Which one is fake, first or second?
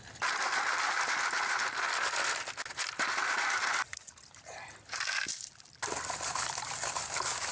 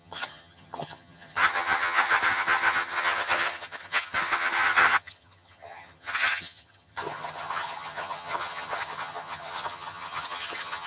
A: second